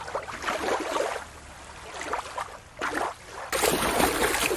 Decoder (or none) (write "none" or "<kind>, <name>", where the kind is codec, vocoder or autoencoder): none